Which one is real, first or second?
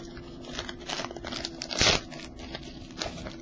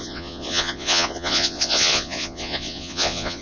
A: first